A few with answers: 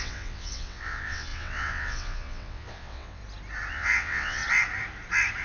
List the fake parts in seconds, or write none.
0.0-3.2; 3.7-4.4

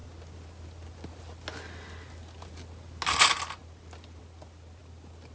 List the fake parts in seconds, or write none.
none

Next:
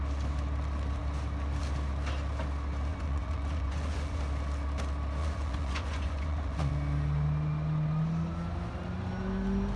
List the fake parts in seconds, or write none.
2.9-4.2; 5.2-6.7